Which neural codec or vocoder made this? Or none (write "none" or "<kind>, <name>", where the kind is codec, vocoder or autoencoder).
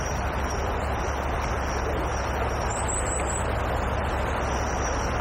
none